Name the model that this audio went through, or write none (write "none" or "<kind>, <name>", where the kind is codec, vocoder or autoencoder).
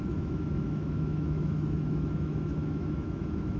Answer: autoencoder, DAC-VAE